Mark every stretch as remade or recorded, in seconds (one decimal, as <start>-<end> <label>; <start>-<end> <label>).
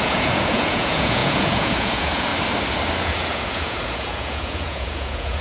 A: 0.0-2.3 remade; 2.3-3.0 recorded; 3.0-5.4 remade